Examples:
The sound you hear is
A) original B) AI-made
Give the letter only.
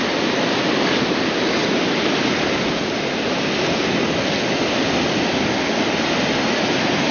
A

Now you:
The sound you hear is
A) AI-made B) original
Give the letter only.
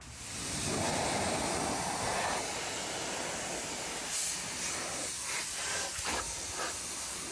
B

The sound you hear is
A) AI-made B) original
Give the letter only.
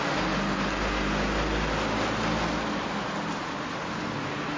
B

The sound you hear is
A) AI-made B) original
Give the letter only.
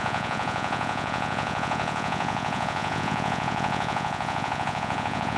A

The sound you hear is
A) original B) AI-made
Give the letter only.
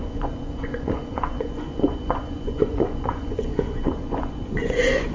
B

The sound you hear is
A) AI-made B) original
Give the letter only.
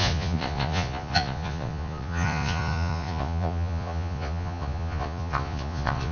A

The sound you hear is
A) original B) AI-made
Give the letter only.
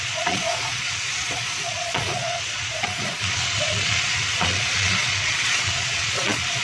B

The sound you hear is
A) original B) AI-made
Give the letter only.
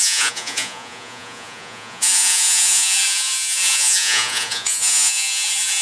B